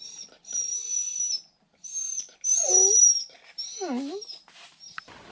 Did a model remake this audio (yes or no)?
no